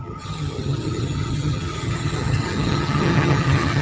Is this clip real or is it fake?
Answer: fake